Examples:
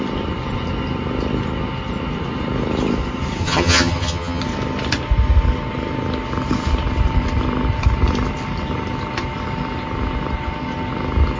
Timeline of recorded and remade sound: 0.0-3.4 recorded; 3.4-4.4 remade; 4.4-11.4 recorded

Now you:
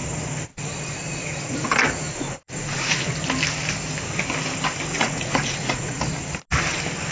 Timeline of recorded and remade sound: 0.0-2.1 recorded; 2.1-3.0 remade; 3.0-4.9 recorded; 4.9-6.0 remade; 6.0-7.1 recorded

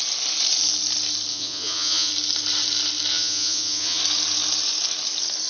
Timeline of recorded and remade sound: 0.0-1.3 recorded; 1.3-2.1 remade; 2.1-3.1 recorded; 3.1-4.0 remade; 4.0-5.5 recorded